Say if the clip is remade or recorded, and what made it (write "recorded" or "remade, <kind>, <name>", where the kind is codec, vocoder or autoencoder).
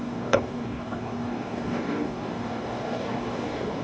remade, codec, DAC